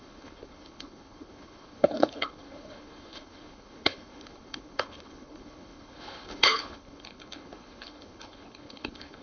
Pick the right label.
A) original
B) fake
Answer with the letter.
B